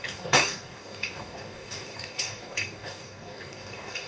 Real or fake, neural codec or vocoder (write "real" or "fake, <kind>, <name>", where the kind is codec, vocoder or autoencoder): fake, codec, DAC